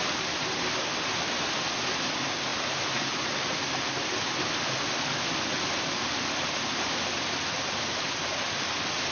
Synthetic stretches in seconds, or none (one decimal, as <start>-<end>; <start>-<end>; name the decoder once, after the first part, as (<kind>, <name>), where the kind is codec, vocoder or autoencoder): none